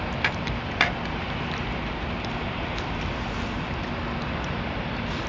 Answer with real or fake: real